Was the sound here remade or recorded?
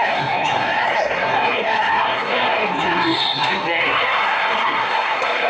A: remade